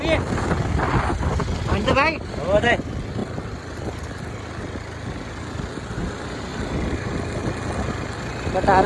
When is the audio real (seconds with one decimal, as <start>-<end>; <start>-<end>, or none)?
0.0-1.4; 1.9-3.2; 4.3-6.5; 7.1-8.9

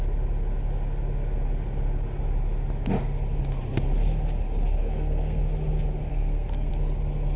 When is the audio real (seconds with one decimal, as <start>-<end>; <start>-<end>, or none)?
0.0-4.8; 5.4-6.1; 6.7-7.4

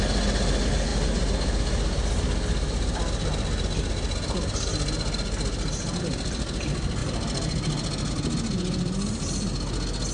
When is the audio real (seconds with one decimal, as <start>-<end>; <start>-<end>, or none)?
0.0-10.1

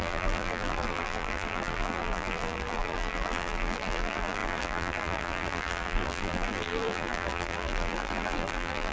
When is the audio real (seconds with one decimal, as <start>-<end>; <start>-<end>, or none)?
none

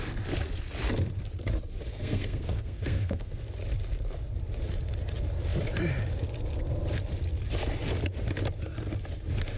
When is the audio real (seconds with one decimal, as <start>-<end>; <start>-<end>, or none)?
0.0-1.9; 3.4-9.6

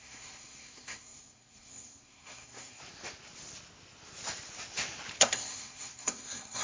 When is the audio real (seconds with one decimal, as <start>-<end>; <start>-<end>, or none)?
2.8-5.2

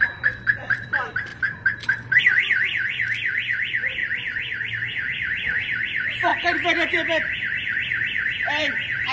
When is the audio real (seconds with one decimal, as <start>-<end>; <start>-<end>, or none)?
6.3-6.9

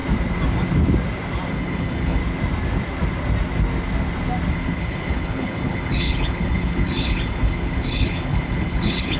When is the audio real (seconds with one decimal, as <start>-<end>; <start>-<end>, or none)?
0.0-1.5; 2.2-4.5